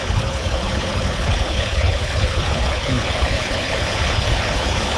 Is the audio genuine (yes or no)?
no